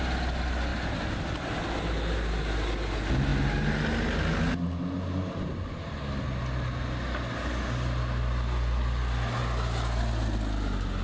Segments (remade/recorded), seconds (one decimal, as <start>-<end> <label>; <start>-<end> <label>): 0.0-0.7 recorded; 0.7-1.6 remade; 1.6-11.0 recorded